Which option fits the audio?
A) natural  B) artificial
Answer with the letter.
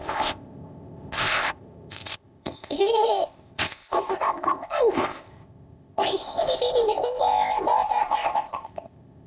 B